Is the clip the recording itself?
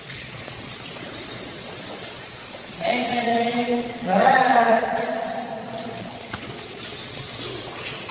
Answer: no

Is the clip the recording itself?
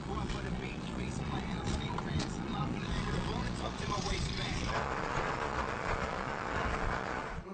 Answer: no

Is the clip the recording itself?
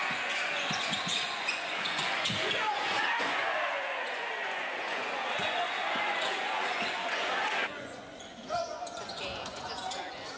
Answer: no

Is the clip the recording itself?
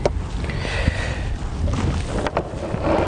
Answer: yes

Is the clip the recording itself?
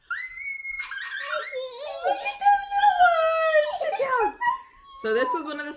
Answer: yes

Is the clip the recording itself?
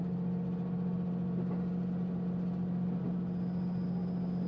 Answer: yes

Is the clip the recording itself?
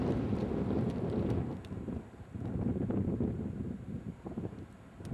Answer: yes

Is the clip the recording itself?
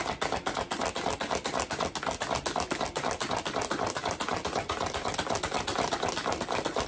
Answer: yes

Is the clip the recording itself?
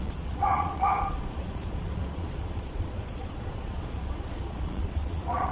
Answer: no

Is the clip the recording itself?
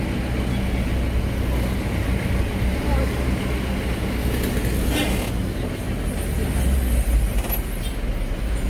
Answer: yes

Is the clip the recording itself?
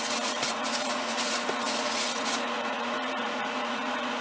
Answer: no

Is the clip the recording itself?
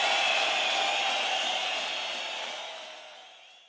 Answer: yes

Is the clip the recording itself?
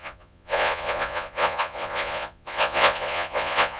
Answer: no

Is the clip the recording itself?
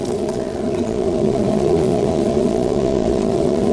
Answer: no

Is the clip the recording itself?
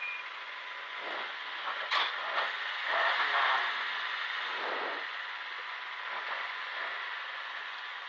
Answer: no